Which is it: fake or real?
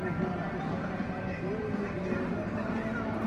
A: real